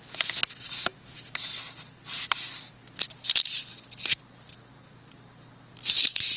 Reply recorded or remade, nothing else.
recorded